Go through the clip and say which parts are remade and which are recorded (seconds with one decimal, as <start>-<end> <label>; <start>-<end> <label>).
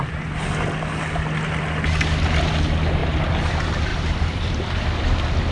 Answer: 0.0-3.9 recorded; 3.9-4.8 remade; 4.8-5.5 recorded